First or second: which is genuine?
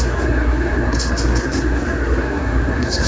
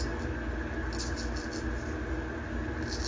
second